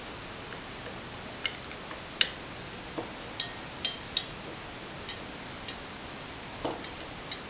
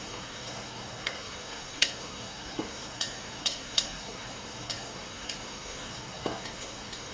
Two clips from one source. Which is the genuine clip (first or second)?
first